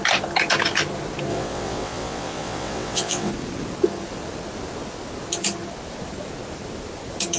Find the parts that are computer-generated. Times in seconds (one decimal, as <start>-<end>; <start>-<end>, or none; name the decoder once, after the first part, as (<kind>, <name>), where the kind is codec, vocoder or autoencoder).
1.3-3.3 (vocoder, WaveNeXt)